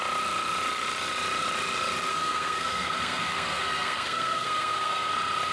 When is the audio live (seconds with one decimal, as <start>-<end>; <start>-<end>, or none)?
0.0-2.1; 5.1-5.5